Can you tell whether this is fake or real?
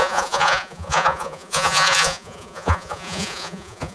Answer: fake